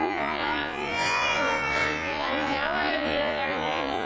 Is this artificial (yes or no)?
yes